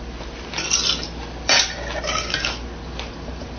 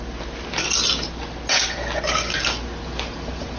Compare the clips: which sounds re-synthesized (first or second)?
first